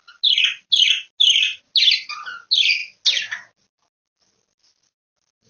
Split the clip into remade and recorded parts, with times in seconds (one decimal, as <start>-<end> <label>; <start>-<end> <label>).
0.0-5.5 recorded